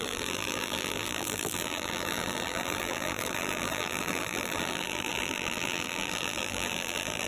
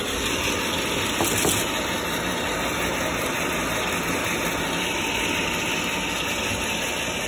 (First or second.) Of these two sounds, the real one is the second